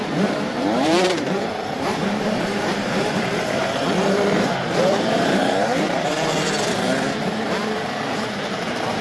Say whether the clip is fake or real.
fake